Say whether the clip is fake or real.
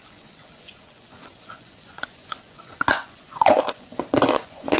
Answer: fake